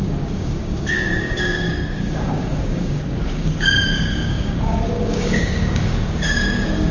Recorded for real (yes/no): no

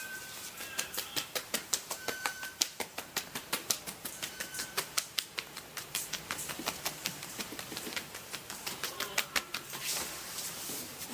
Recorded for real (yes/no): no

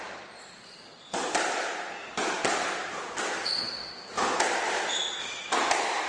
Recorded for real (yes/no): yes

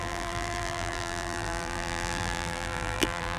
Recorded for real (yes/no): no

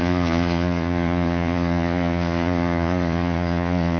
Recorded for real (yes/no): no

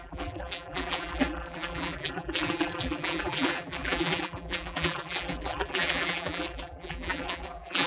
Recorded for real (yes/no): no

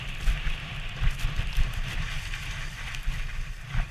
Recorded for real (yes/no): yes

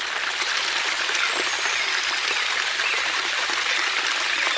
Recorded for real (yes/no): yes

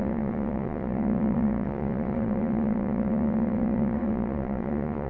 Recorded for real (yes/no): no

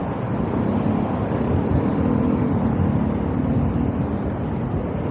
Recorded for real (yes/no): yes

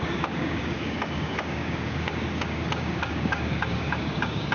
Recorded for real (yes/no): no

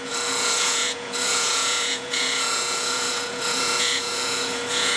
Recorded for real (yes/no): no